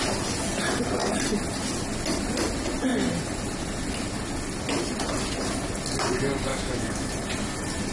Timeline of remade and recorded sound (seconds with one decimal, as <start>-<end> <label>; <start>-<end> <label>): 0.0-6.5 recorded; 6.5-7.1 remade; 7.1-7.9 recorded

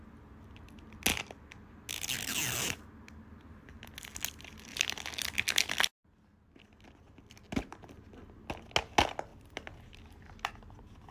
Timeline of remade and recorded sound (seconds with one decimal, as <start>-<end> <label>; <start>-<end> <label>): 0.0-11.1 recorded

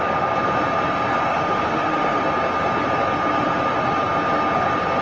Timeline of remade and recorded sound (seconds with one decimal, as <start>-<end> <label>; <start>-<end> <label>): 0.0-1.3 recorded; 1.3-2.2 remade; 2.2-5.0 recorded

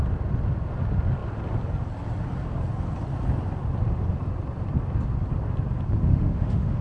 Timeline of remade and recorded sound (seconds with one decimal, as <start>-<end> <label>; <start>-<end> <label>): 0.0-6.1 recorded; 6.1-6.8 remade

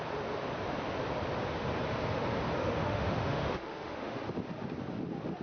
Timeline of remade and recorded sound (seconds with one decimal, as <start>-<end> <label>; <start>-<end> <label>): 0.0-2.6 recorded; 2.6-4.2 remade; 4.2-5.4 recorded

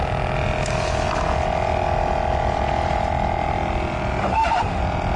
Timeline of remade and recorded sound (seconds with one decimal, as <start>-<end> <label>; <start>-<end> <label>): 0.0-4.2 recorded; 4.2-4.8 remade; 4.8-5.2 recorded

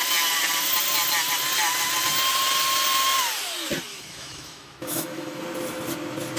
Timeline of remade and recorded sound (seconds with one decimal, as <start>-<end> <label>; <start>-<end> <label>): 0.0-3.9 recorded; 3.9-5.4 remade; 5.4-6.4 recorded